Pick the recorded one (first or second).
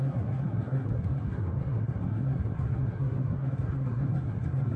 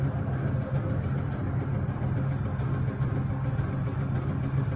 second